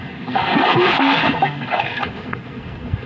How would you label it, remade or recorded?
remade